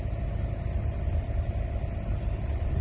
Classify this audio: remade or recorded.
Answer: recorded